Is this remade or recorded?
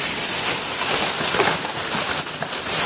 recorded